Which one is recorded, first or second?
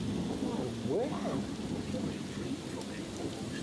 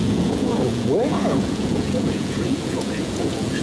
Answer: first